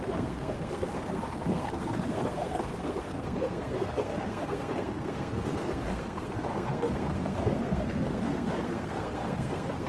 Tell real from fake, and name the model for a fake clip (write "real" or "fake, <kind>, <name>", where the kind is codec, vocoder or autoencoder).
fake, codec, SNAC